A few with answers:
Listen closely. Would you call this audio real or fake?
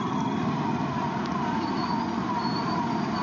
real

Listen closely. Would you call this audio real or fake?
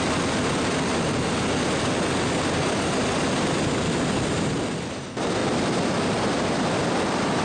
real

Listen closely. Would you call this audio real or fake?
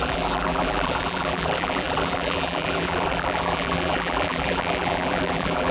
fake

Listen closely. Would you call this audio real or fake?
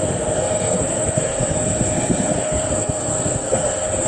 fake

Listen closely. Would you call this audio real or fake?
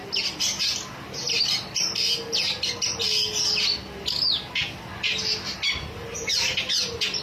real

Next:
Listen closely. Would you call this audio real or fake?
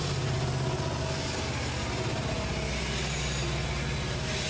real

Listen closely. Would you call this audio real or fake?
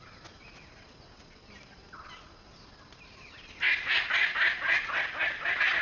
real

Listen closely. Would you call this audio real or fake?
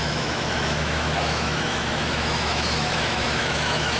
fake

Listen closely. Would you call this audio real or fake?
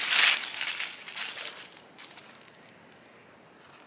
real